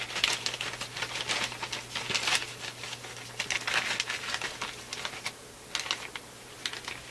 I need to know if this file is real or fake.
real